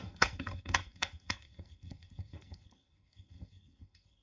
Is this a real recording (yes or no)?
no